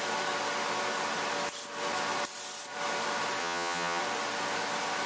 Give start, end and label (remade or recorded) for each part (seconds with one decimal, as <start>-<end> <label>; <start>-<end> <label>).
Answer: 0.0-3.4 recorded; 3.4-4.0 remade; 4.0-5.1 recorded